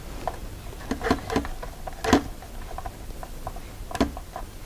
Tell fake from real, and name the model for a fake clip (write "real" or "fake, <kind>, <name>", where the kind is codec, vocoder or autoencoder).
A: real